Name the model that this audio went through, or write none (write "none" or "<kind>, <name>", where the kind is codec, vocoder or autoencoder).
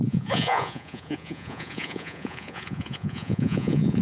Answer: vocoder, Vocos